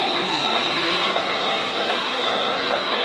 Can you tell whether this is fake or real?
fake